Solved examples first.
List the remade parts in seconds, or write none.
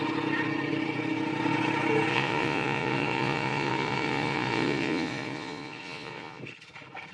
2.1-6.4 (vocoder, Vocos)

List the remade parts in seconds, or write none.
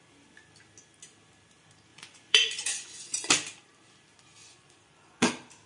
1.9-3.3 (vocoder, Vocos); 4.4-5.3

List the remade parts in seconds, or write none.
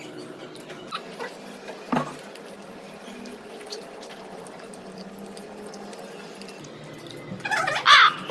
none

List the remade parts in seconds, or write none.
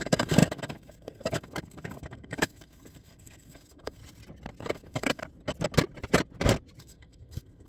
0.0-4.0 (codec, SNAC); 4.6-5.2; 6.8-7.7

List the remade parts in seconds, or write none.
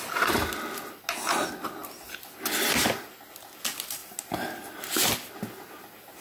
none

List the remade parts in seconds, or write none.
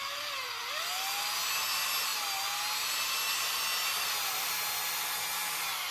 none